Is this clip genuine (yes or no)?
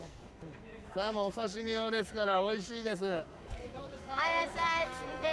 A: no